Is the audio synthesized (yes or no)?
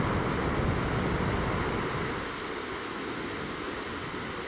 no